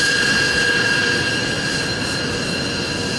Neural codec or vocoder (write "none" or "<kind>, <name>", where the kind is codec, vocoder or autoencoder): none